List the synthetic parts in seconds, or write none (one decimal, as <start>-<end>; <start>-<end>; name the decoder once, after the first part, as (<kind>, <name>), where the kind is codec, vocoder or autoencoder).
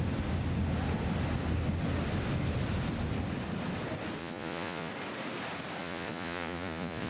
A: 4.2-4.9 (vocoder, Vocos); 5.8-7.1